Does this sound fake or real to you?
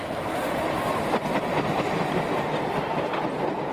real